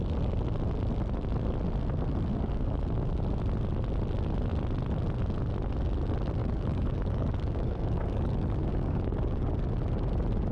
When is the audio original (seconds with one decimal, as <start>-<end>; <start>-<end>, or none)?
0.0-2.3; 3.2-6.4; 9.5-10.5